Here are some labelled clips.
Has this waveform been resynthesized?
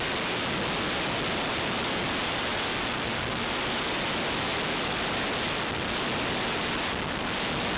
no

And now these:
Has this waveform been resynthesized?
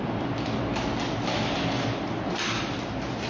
no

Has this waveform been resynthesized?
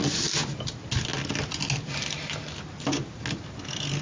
no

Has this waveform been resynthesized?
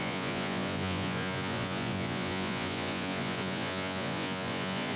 yes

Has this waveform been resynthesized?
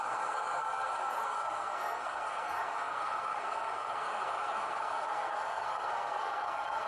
yes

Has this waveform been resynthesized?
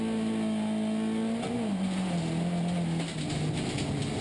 no